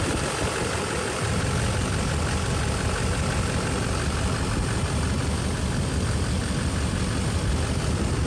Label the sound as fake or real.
real